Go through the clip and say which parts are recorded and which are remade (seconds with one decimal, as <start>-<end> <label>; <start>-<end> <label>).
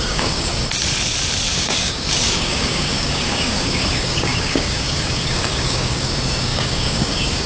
0.0-0.5 remade; 0.5-1.5 recorded; 1.5-7.5 remade